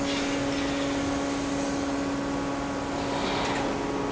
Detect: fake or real real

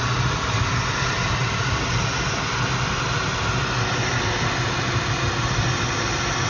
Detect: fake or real real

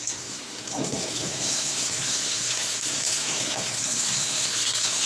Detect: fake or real fake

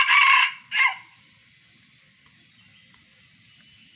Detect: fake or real real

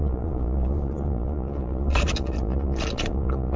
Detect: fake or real fake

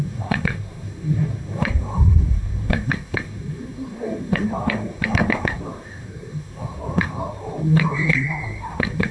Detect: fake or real fake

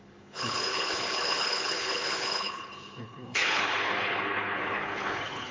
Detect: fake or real fake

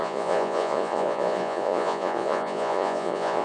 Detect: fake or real fake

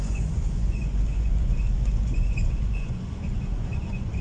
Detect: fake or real fake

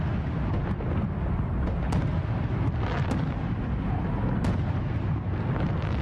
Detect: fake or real real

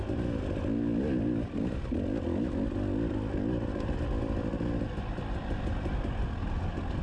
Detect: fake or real real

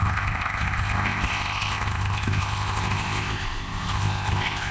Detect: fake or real fake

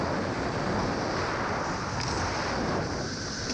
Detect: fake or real real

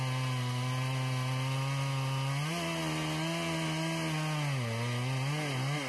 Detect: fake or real real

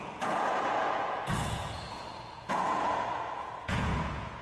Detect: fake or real fake